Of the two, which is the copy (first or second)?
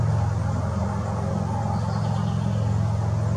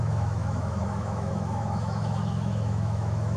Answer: second